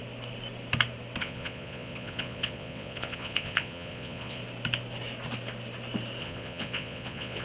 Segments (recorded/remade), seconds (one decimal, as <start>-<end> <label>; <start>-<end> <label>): 0.0-1.2 recorded; 1.2-4.4 remade; 4.4-6.2 recorded; 6.2-7.4 remade